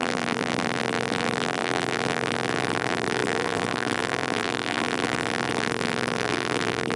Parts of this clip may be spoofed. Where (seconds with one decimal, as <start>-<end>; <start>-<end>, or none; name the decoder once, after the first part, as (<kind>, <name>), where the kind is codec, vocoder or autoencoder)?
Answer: 0.0-7.0 (vocoder, BigVGAN v2)